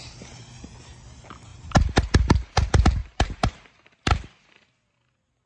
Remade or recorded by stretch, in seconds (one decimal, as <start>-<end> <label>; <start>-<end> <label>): 0.0-1.5 recorded; 1.5-2.5 remade; 2.5-3.0 recorded; 3.0-3.7 remade; 3.7-5.5 recorded